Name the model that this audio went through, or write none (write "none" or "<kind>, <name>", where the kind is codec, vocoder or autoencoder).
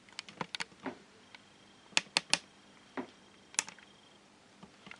none